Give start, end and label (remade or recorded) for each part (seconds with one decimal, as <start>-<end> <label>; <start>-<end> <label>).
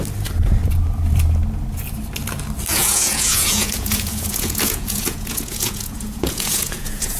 0.0-2.7 recorded; 2.7-7.2 remade